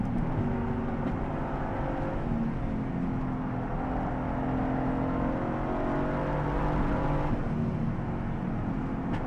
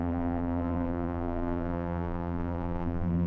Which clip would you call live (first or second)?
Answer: first